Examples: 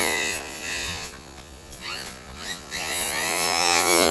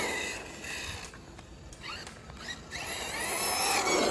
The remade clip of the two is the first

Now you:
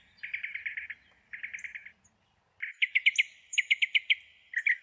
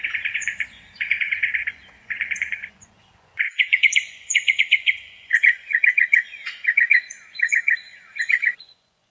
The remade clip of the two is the second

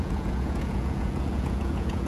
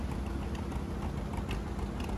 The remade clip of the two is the first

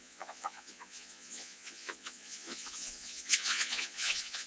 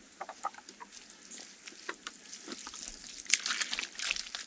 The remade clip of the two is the first